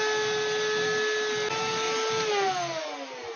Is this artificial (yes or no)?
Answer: no